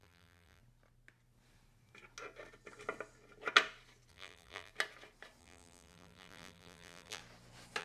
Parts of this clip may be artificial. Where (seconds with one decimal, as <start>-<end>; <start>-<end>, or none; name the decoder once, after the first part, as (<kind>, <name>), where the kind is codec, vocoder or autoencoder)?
0.0-0.6 (vocoder, BigVGAN v2); 4.1-4.7; 5.4-7.2